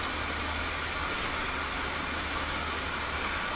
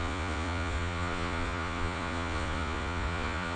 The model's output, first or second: second